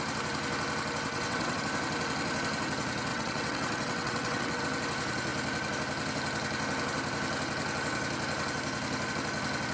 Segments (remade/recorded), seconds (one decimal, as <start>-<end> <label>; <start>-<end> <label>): 0.0-1.1 recorded; 1.1-1.6 remade; 1.6-3.1 recorded; 3.1-4.6 remade; 4.6-9.7 recorded